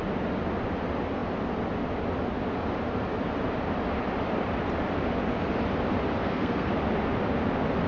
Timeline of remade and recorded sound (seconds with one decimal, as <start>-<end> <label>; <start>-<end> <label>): 0.0-6.2 recorded; 6.2-6.7 remade; 6.7-7.9 recorded